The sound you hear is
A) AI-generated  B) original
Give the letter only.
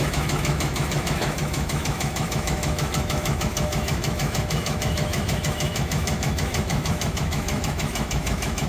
A